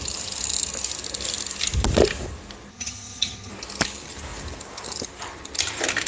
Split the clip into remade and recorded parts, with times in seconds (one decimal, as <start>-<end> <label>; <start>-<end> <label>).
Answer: 0.0-2.7 recorded; 2.7-3.5 remade; 3.5-6.1 recorded